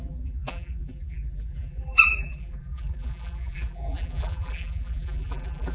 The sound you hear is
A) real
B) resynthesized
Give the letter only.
B